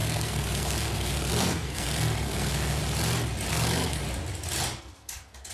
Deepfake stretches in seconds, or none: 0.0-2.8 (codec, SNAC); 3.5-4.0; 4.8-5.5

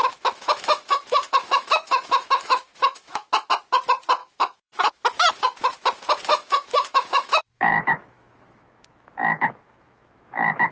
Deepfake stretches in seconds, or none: 0.0-3.5 (autoencoder, DAC-VAE); 4.2-5.3; 6.3-10.7

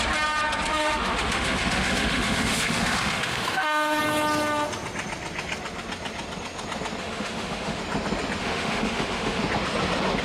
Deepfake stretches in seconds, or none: 0.7-4.0 (autoencoder, DAC-VAE); 7.0-7.8; 8.4-9.4

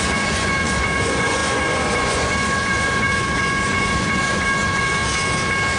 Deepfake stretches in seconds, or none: 0.0-5.0 (vocoder, Vocos)

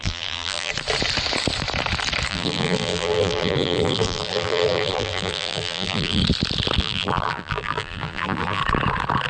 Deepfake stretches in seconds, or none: 0.0-0.7 (vocoder, BigVGAN v2); 2.3-6.2; 6.8-8.6

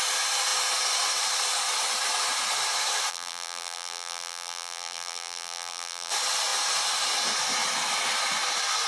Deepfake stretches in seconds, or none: 3.1-6.1 (vocoder, BigVGAN v2)